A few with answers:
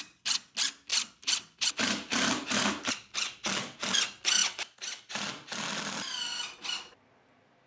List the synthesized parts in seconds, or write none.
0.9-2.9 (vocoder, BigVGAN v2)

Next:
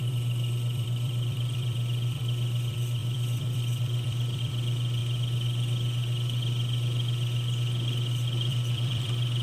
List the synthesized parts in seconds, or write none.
0.0-5.0 (vocoder, BigVGAN v2); 8.5-9.4

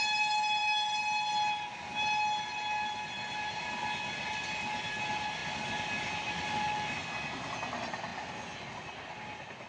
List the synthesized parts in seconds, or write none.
none

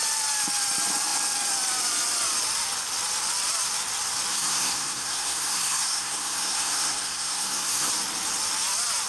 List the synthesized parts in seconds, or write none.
4.3-7.9 (codec, SNAC)

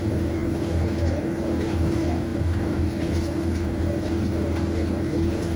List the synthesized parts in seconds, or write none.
0.0-5.6 (codec, DAC)